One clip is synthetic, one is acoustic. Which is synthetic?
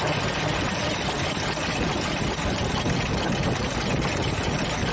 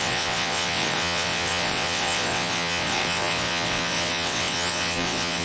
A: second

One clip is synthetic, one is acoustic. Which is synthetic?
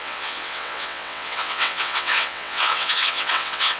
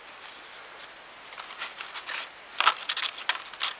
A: first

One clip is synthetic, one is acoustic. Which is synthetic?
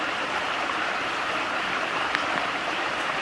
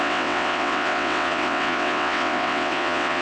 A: second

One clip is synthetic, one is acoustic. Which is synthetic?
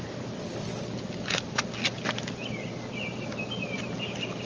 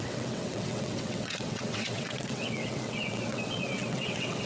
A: second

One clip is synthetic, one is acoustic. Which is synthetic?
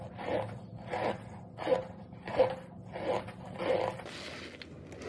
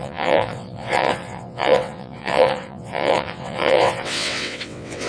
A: second